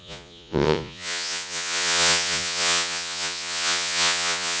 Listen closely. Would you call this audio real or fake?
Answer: fake